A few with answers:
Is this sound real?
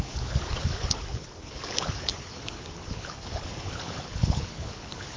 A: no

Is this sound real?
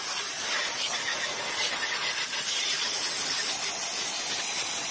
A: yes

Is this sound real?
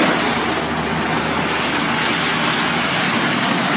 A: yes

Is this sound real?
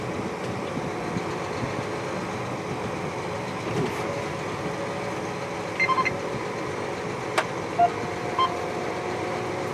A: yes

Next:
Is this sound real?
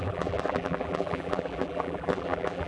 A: no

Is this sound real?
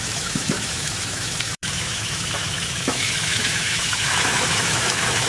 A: no